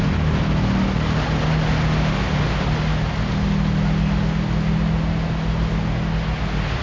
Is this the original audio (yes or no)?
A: yes